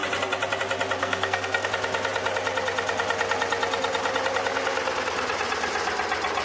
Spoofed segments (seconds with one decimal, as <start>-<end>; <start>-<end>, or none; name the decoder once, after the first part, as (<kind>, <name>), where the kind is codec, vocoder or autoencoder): 1.0-1.7 (codec, SNAC)